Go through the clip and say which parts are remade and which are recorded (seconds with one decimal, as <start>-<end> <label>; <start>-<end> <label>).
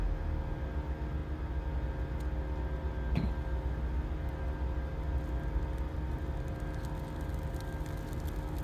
0.0-8.6 recorded